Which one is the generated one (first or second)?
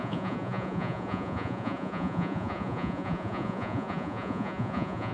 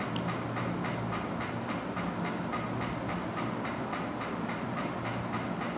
first